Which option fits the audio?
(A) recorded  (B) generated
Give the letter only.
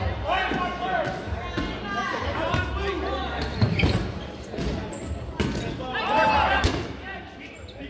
A